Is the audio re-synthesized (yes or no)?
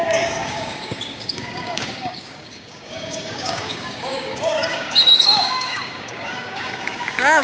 yes